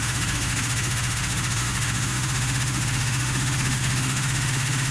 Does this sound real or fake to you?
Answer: fake